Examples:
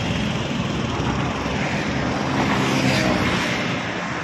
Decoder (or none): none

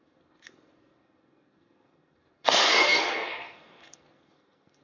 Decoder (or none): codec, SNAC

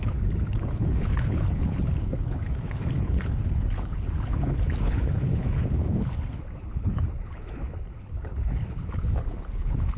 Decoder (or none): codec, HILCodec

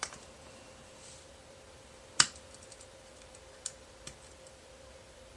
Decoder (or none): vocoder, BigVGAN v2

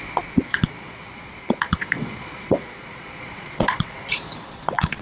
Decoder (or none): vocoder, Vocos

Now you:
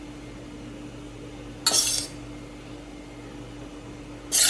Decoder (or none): none